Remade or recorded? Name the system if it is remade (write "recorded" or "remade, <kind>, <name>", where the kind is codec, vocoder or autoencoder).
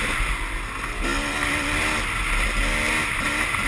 recorded